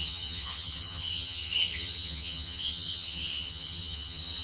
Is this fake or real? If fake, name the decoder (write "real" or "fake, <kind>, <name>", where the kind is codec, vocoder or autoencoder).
fake, vocoder, HiFi-GAN